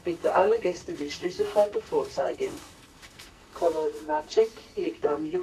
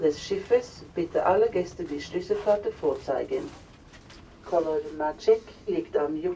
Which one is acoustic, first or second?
second